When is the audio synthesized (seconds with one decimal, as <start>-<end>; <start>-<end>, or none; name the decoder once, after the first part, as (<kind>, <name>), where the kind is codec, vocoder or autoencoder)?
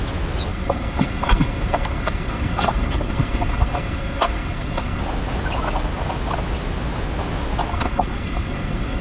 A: 0.5-5.0 (codec, SNAC); 7.7-9.0